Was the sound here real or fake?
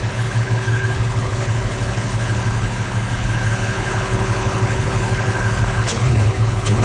fake